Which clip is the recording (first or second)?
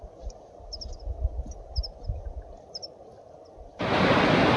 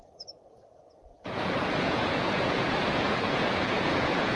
first